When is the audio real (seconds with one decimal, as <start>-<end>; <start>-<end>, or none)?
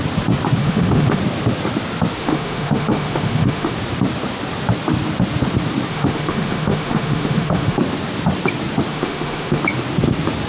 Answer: 0.0-0.6; 1.2-2.2; 3.7-5.9; 7.8-8.9; 9.6-10.5